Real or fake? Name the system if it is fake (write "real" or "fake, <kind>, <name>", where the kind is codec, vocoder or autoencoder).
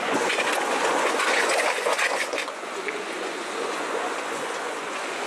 fake, vocoder, Vocos